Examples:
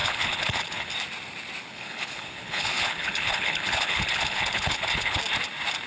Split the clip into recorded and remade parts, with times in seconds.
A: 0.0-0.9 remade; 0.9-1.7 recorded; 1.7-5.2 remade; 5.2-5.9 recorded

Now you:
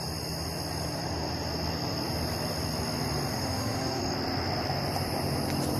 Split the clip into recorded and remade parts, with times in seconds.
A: 0.0-3.3 recorded; 3.3-4.0 remade; 4.0-5.8 recorded

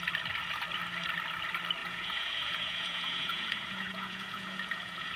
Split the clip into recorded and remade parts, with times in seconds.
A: 0.0-1.8 recorded; 1.8-5.2 remade

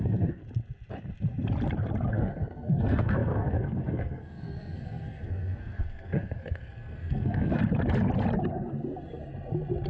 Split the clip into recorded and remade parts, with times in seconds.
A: 0.0-0.4 remade; 0.4-2.1 recorded; 2.1-7.6 remade; 7.6-9.9 recorded

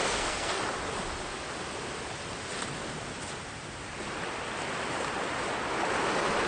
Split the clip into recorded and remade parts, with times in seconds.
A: 0.0-0.6 remade; 0.6-6.5 recorded